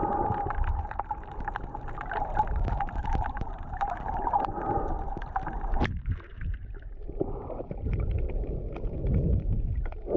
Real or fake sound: fake